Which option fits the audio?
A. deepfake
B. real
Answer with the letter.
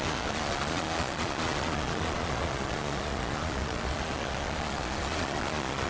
A